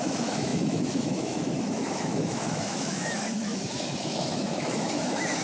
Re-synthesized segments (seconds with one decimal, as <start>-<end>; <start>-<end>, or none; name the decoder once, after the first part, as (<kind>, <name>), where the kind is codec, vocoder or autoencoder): 0.0-5.4 (autoencoder, DAC-VAE)